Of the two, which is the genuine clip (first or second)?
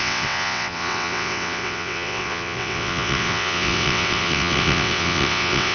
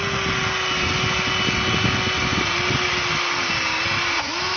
second